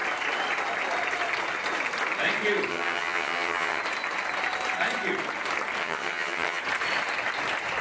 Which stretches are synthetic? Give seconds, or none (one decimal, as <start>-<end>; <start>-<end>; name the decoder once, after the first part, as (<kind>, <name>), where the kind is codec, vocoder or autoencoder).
2.7-3.8 (vocoder, HiFi-GAN); 5.8-6.6